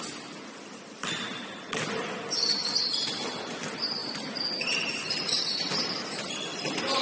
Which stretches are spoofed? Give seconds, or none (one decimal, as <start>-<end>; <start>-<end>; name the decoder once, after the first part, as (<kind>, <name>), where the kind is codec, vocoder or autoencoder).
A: none